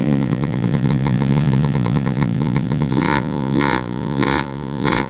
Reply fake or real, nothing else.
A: fake